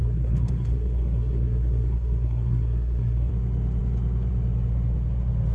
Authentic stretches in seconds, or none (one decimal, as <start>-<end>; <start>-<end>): 3.3-5.5